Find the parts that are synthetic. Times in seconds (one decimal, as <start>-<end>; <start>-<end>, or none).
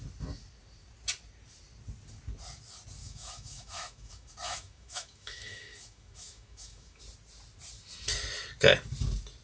3.0-7.0